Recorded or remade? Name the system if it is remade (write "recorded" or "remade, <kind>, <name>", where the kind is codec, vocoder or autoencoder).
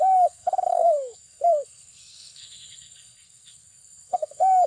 remade, codec, SNAC